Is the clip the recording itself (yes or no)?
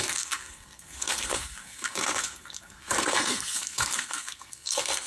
no